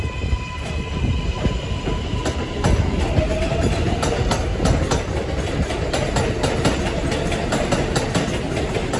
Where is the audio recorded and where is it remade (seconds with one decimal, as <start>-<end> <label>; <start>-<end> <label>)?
0.0-9.0 recorded

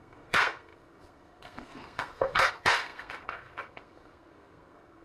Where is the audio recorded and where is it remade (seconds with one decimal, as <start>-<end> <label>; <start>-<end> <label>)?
0.0-5.0 remade